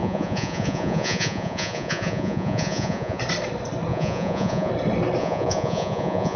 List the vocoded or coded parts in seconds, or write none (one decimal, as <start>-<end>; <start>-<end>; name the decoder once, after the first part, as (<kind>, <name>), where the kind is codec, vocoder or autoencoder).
0.0-3.2 (vocoder, Vocos); 3.9-4.7; 5.2-6.4